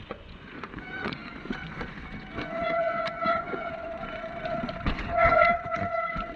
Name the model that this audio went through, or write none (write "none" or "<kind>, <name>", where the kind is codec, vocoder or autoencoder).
vocoder, Vocos